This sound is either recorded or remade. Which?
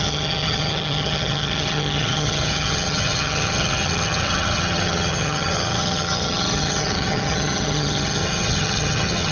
remade